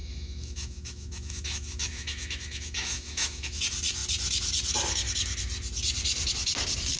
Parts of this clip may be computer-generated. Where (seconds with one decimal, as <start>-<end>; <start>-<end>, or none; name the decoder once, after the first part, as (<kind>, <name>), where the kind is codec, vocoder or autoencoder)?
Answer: 0.0-3.6 (autoencoder, DAC-VAE)